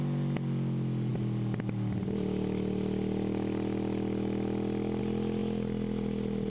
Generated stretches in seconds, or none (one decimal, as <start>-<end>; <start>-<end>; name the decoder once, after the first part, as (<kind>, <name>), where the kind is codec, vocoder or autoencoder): none